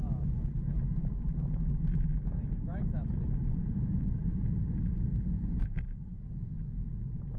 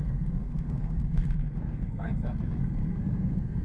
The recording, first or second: first